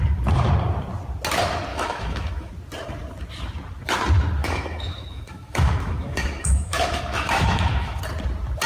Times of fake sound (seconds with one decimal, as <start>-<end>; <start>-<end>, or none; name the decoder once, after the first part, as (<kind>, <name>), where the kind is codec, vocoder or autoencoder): 1.7-2.5 (autoencoder, DAC-VAE); 4.4-8.0